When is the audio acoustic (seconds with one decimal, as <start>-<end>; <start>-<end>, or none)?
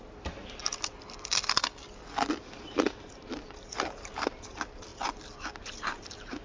0.6-2.5; 4.9-5.6